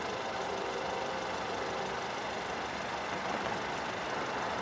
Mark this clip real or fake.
real